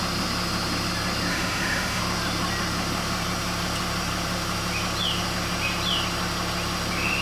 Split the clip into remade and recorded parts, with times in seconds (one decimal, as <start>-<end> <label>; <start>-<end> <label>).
0.0-1.3 recorded; 1.3-2.0 remade; 2.0-7.2 recorded